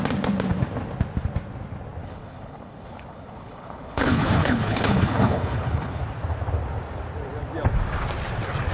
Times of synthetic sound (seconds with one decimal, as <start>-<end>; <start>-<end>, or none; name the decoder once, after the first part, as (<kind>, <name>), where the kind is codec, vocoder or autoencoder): 2.0-6.0 (codec, HILCodec)